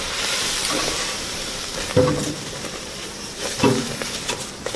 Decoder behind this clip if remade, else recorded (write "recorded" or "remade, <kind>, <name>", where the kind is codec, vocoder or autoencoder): remade, vocoder, BigVGAN v2